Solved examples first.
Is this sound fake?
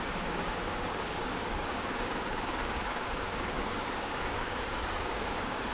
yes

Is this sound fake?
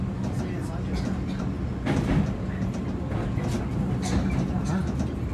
no